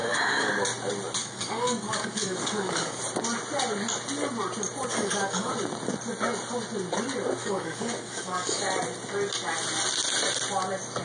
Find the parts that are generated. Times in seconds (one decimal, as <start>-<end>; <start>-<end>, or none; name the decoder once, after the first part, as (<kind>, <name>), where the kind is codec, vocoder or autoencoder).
0.0-0.5 (codec, DAC); 1.2-3.0; 4.9-5.5; 7.4-8.6